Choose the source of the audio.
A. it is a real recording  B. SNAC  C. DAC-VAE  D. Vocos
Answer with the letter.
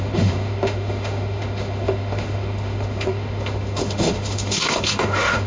C